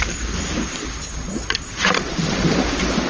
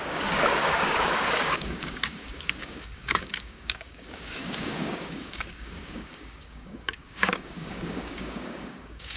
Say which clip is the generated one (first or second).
second